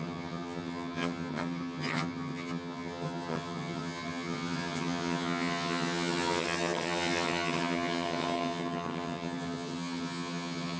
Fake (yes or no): yes